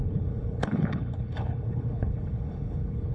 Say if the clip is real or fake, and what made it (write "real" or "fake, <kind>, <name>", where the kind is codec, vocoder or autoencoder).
fake, codec, HILCodec